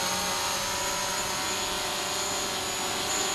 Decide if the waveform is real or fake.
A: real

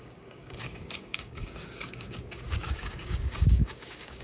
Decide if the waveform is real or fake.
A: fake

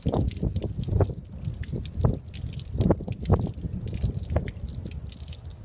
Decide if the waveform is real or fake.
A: real